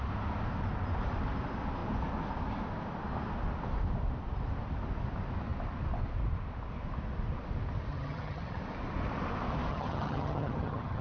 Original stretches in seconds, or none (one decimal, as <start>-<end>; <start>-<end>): 0.0-7.9; 8.6-9.7